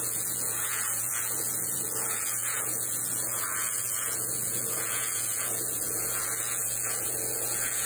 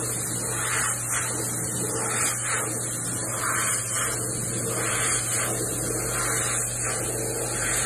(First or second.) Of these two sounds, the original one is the second